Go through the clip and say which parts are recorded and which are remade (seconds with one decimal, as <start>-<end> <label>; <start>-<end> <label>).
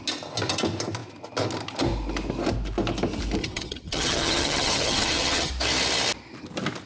0.0-3.4 recorded; 3.4-5.5 remade; 5.5-6.9 recorded